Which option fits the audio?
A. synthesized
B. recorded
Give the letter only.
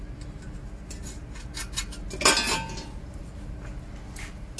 B